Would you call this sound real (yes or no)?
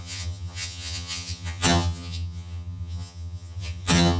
no